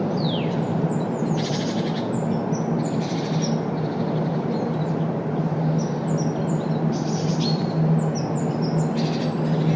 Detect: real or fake real